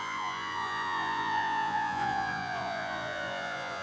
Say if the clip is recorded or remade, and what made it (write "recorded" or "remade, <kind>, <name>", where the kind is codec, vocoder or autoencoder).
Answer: remade, vocoder, Vocos